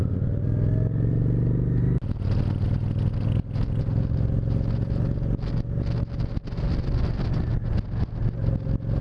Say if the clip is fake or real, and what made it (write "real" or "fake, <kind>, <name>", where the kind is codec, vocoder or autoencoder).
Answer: real